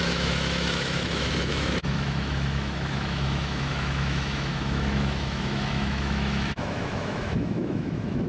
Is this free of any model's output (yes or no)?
no